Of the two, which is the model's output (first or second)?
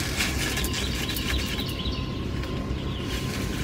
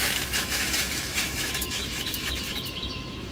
second